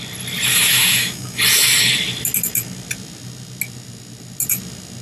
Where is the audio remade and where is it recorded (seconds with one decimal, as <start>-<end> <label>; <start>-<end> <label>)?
0.0-0.5 recorded; 0.5-1.4 remade; 1.4-5.0 recorded